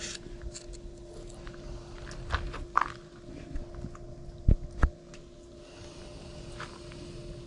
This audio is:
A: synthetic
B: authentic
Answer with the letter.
B